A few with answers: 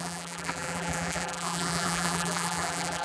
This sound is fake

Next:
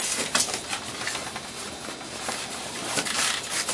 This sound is real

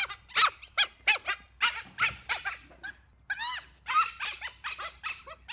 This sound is real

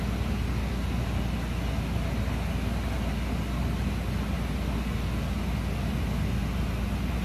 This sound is real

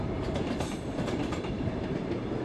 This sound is fake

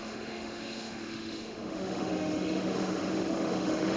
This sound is fake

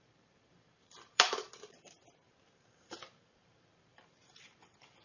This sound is fake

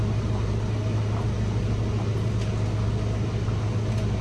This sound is real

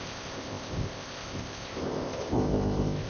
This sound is fake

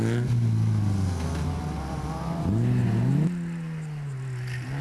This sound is real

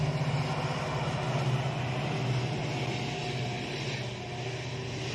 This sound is real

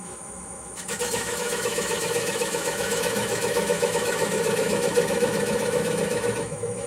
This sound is fake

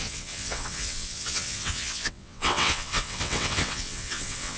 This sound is fake